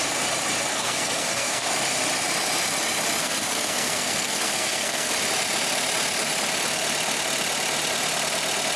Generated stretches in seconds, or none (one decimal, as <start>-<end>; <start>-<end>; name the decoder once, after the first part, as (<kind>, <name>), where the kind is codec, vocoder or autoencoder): 0.7-1.7 (codec, SNAC); 3.2-5.1